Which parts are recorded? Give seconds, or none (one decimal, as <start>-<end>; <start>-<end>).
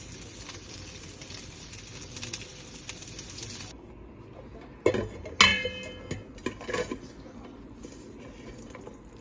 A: 0.0-9.2